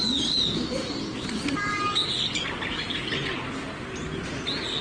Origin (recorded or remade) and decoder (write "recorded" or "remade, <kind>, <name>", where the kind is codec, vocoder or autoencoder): recorded